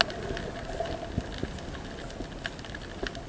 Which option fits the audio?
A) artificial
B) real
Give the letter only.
B